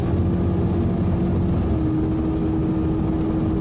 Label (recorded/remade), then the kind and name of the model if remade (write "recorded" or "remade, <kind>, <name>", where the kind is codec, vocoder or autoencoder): recorded